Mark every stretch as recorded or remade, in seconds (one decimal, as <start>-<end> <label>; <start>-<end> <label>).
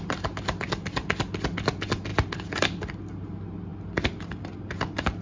0.0-5.2 recorded